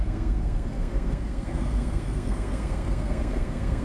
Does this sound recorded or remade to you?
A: remade